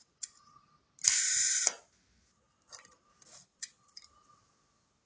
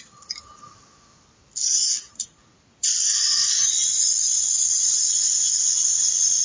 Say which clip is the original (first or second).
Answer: first